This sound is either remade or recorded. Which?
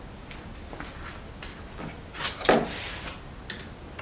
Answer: recorded